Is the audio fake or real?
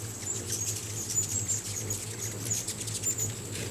real